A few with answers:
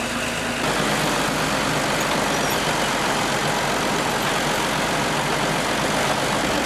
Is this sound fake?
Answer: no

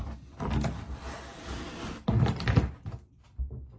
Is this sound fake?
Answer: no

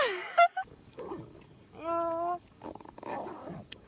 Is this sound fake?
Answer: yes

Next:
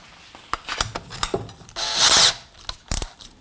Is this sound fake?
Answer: no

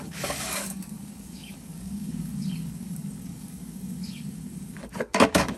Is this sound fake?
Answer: yes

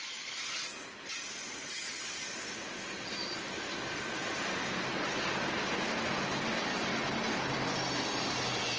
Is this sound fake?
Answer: no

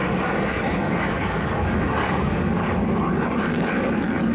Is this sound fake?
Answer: yes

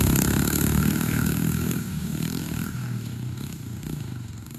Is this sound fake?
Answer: yes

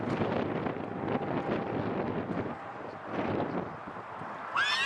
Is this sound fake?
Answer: no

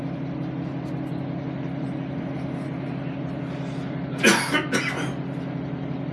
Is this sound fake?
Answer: no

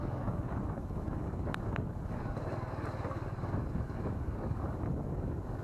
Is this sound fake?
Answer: yes